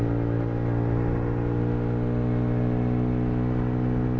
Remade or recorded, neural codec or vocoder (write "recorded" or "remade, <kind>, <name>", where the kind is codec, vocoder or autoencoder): recorded